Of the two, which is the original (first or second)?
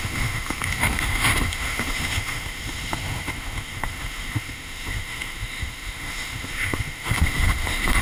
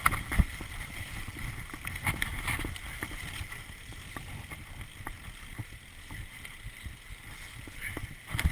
second